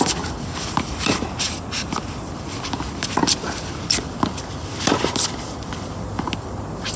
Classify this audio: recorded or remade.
recorded